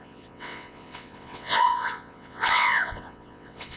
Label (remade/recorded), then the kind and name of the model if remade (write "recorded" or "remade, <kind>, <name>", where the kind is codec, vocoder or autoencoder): remade, vocoder, WaveNeXt